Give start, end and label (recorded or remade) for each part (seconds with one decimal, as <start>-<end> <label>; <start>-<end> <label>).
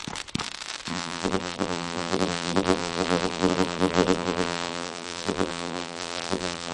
0.0-0.9 recorded; 0.9-6.7 remade